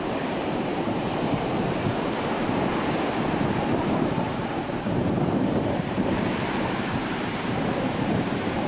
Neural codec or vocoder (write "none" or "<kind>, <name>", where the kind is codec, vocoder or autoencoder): vocoder, BigVGAN v2